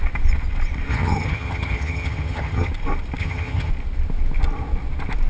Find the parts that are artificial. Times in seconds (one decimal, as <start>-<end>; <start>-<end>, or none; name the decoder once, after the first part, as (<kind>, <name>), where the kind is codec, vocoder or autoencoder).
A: 0.9-2.7 (vocoder, HiFi-GAN); 3.2-3.7